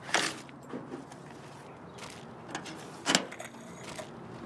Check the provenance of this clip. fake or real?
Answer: real